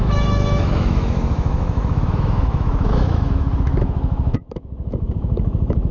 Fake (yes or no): yes